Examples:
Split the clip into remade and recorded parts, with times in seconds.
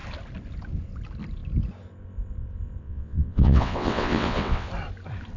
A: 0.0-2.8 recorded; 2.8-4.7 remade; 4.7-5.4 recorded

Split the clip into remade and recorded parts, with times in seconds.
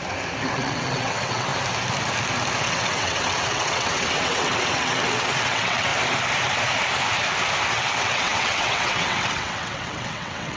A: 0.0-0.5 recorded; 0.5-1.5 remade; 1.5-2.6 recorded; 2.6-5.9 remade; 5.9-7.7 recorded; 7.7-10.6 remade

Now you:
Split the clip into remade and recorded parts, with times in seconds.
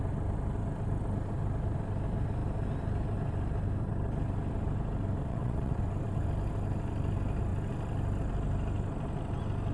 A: 0.0-5.3 recorded; 5.3-5.8 remade; 5.8-9.7 recorded